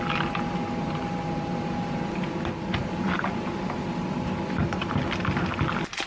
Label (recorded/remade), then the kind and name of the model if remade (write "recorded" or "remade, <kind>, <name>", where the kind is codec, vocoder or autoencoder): recorded